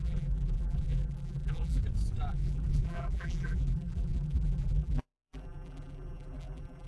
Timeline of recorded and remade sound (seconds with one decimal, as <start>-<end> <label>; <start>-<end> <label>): 0.0-1.8 remade; 1.8-2.3 recorded; 2.3-6.9 remade